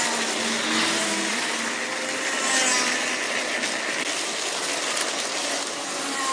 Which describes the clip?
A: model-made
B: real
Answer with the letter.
B